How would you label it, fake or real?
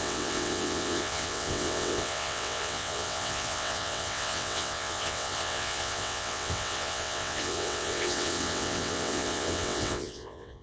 fake